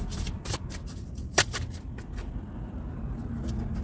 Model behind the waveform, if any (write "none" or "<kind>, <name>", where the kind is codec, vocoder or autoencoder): none